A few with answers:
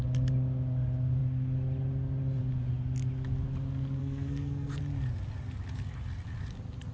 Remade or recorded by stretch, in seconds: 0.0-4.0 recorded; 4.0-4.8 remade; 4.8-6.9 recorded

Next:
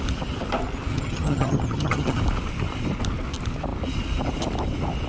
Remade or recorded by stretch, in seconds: 0.0-0.9 recorded; 0.9-2.2 remade; 2.2-5.1 recorded

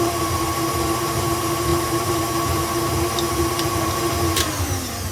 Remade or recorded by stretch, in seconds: 0.0-5.1 remade